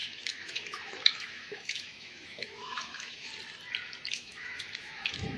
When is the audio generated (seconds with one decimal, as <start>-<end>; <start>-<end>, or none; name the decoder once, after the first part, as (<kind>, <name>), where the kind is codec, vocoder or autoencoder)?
0.0-3.3 (autoencoder, DAC-VAE); 4.1-5.4